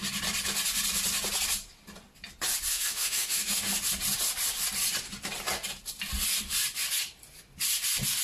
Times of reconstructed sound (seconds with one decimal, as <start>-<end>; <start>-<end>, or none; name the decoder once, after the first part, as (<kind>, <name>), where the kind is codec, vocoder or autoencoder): 2.7-3.7 (autoencoder, DAC-VAE)